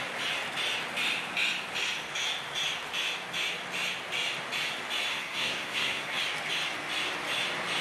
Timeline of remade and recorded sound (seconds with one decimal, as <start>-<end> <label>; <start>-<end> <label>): 0.0-5.1 recorded; 5.1-6.2 remade; 6.2-7.8 recorded